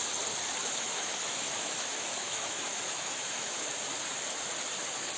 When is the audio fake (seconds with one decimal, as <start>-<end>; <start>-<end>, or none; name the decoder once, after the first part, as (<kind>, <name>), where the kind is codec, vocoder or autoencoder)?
0.6-3.7 (autoencoder, DAC-VAE)